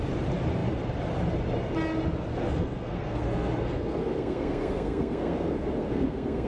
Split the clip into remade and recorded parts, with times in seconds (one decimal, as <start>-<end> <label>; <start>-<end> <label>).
0.0-2.4 recorded; 2.4-6.5 remade